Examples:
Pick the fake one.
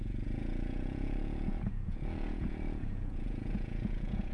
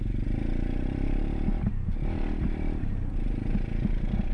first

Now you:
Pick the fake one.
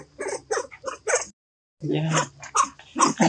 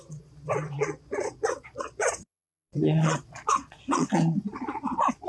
second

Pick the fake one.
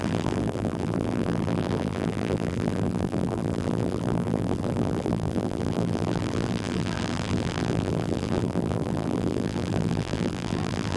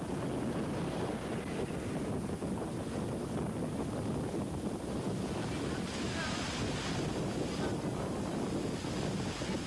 first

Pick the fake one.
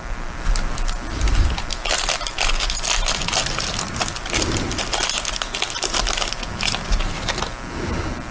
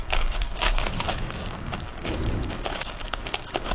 second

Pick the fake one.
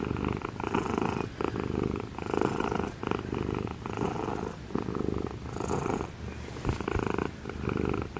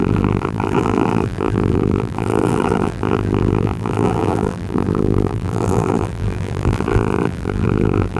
second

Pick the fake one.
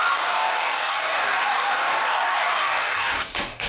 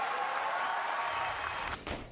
first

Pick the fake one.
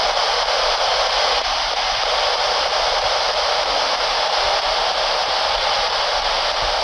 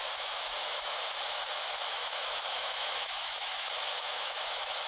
second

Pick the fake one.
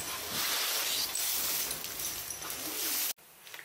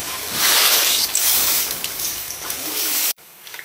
second